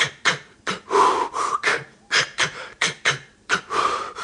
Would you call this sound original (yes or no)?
no